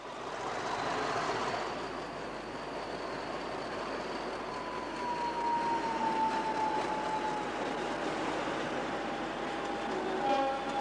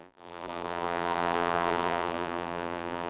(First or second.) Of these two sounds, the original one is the first